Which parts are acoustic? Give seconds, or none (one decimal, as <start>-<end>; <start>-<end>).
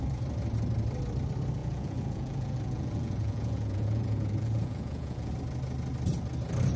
0.0-1.6; 5.3-6.8